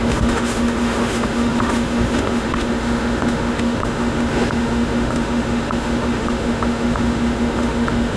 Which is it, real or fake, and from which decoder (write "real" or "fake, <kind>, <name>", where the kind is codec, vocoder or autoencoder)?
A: fake, autoencoder, DAC-VAE